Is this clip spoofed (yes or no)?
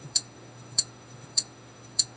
yes